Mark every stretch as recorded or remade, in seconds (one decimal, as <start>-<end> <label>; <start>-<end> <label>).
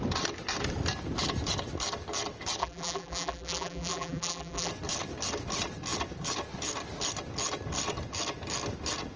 0.0-2.6 recorded; 2.6-4.7 remade; 4.7-9.2 recorded